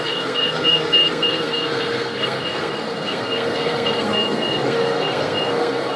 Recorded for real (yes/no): no